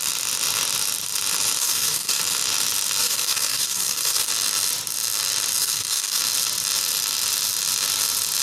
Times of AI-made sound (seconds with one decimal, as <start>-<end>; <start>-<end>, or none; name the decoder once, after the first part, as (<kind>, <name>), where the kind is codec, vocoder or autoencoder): 1.6-2.2 (codec, DAC); 3.0-4.3; 5.6-6.2